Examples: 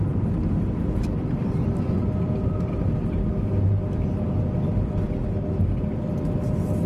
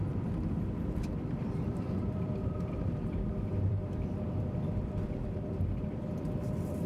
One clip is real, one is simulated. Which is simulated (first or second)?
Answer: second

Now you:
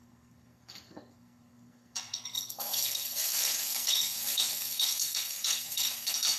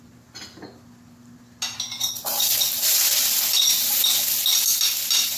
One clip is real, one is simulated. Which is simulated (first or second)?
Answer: first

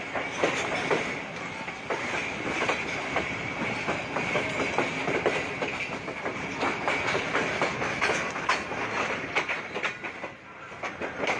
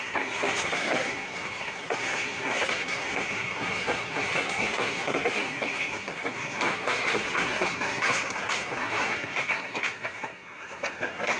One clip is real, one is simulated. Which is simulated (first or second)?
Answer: second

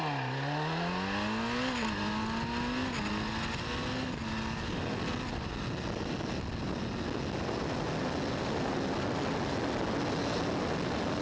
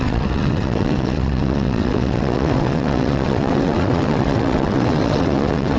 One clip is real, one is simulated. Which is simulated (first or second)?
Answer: second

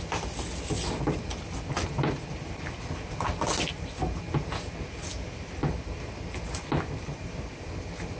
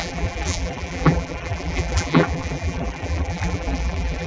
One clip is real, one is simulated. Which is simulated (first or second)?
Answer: second